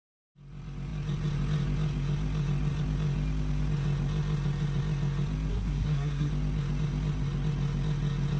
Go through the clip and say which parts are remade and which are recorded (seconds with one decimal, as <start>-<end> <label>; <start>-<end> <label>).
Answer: 0.0-5.5 recorded; 5.5-6.3 remade; 6.3-8.4 recorded